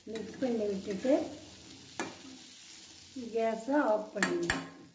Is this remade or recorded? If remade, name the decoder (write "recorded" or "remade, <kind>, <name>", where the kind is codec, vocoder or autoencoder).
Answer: recorded